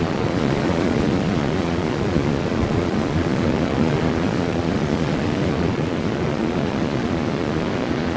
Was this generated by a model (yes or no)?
yes